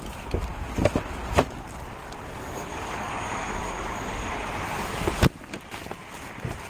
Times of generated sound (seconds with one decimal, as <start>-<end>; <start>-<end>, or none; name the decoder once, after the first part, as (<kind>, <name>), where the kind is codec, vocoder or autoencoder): 2.4-4.3 (codec, DAC)